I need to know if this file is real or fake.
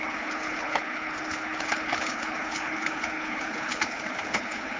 fake